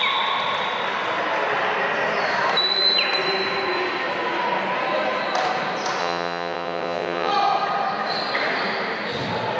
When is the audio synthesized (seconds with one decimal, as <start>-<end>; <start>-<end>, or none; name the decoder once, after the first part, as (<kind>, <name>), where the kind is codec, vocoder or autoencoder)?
6.0-7.3 (vocoder, WaveNeXt)